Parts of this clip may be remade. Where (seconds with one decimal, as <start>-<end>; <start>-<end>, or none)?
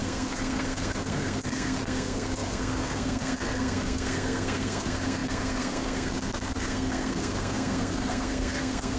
0.0-9.0